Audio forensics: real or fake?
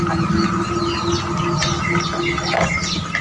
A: real